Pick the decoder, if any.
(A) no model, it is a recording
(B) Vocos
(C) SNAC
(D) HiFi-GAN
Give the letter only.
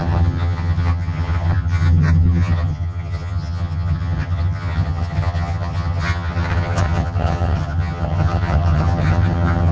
D